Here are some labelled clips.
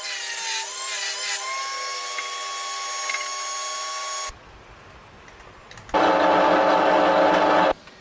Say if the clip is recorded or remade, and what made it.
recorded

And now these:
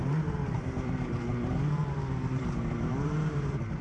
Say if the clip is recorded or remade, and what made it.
remade, vocoder, BigVGAN v2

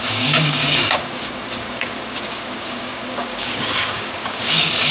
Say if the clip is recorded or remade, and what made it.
remade, codec, DAC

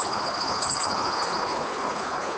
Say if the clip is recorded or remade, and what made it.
remade, codec, HILCodec